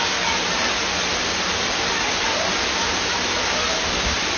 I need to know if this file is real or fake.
real